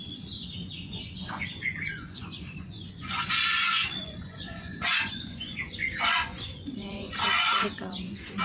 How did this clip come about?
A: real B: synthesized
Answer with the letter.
B